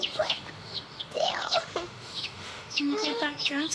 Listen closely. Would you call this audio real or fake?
fake